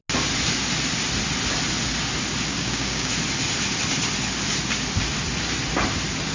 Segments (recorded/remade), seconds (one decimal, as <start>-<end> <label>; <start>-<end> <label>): 0.0-2.5 recorded; 2.5-3.1 remade; 3.1-6.3 recorded